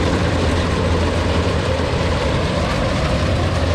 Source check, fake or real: fake